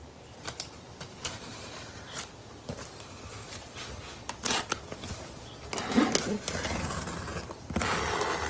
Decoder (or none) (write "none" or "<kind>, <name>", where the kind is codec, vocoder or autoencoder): none